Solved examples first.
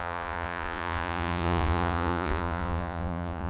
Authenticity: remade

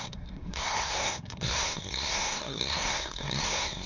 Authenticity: remade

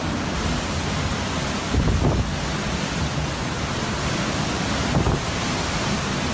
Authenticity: recorded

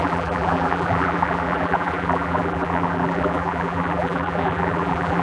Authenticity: remade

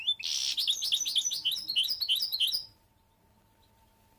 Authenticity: recorded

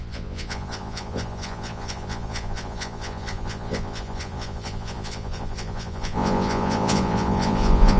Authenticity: remade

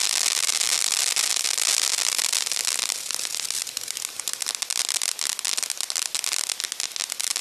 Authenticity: recorded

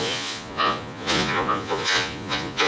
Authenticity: remade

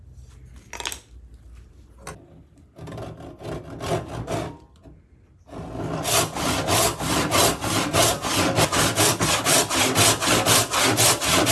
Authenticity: recorded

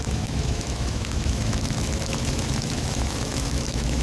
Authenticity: remade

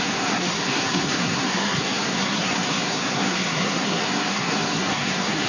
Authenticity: remade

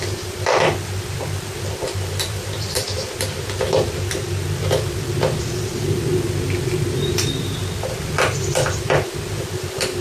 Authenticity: remade